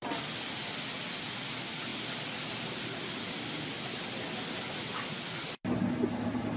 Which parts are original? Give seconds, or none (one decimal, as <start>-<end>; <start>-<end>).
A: 0.0-6.6